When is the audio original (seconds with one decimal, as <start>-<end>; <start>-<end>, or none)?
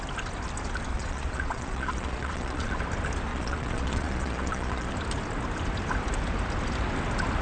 0.0-0.9; 2.8-3.3; 4.9-7.4